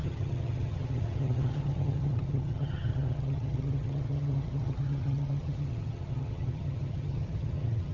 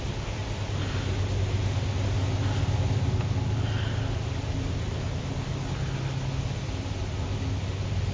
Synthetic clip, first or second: first